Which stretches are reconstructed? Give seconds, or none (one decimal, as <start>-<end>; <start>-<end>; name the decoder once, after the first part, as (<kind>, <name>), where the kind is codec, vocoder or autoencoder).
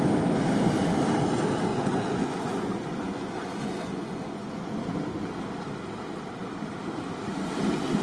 1.7-4.7 (vocoder, Vocos)